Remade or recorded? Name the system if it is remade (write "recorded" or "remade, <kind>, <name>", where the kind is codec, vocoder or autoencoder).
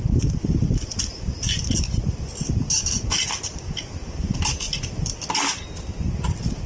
recorded